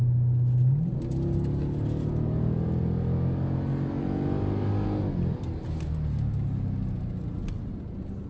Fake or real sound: real